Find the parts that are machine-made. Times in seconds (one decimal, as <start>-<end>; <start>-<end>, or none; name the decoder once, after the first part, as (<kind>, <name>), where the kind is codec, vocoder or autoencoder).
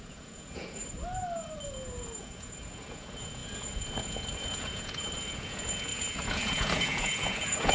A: 0.0-0.8 (vocoder, Vocos); 2.2-7.7